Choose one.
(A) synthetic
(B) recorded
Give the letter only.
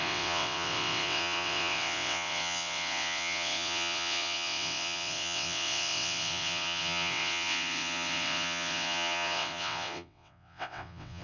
A